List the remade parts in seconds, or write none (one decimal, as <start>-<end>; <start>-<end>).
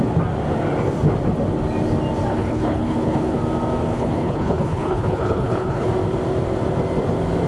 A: 2.3-3.4; 3.9-5.9